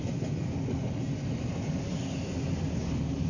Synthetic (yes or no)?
no